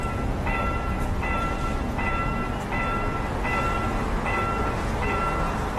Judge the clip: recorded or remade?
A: recorded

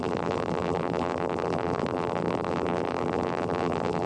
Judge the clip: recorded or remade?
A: remade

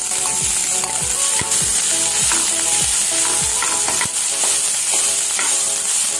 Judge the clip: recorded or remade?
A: recorded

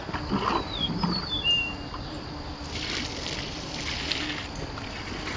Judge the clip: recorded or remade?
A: recorded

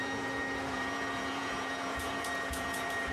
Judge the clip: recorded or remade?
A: remade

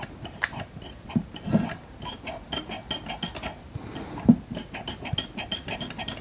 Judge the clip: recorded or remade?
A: recorded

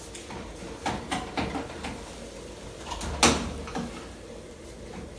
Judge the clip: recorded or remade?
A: recorded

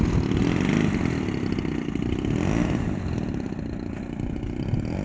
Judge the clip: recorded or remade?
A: recorded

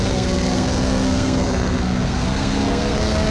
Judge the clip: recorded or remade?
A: remade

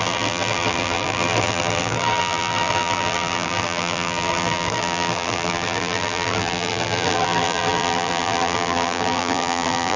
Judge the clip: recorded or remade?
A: remade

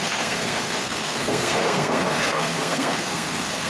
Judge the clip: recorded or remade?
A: remade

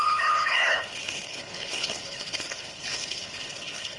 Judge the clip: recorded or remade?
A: remade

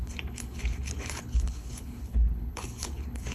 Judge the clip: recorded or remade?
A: remade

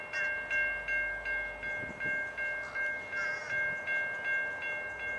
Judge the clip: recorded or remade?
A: recorded